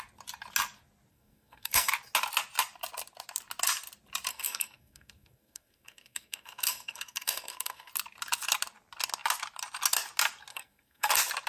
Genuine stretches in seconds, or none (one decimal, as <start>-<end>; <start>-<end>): 0.0-1.1; 1.9-4.3; 7.9-10.5; 11.1-11.5